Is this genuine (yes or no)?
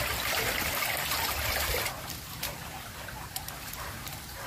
yes